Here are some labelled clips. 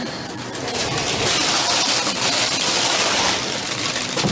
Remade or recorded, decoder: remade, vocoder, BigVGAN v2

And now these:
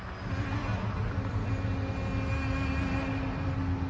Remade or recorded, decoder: recorded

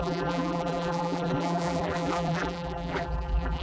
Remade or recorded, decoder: remade, vocoder, BigVGAN v2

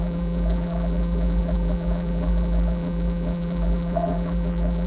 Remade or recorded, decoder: remade, vocoder, BigVGAN v2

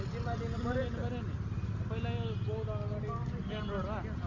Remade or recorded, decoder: recorded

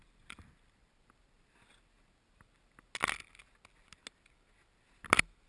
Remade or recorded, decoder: recorded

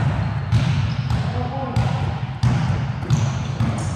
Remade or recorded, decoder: recorded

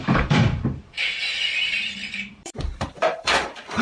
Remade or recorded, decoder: remade, vocoder, BigVGAN v2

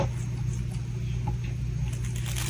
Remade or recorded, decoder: recorded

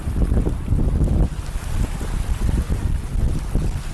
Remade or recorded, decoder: recorded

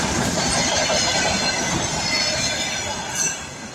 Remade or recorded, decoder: recorded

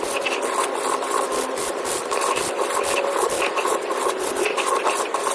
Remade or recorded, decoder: recorded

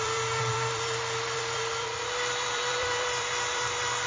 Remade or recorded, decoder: remade, vocoder, BigVGAN v2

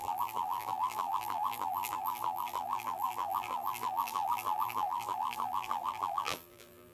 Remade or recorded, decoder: remade, vocoder, BigVGAN v2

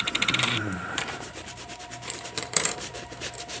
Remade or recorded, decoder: remade, vocoder, BigVGAN v2